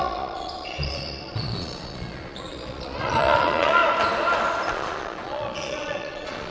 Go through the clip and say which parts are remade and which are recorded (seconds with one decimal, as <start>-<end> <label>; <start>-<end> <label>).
0.0-3.8 remade; 3.8-4.7 recorded; 4.7-6.5 remade